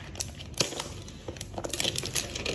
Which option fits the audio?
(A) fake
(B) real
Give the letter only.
B